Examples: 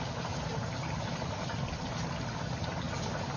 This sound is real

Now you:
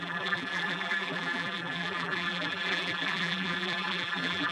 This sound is fake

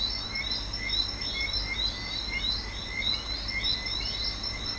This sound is real